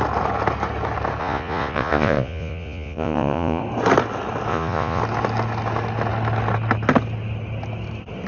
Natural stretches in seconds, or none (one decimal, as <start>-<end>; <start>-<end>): 0.0-1.2; 3.6-4.5; 5.0-8.3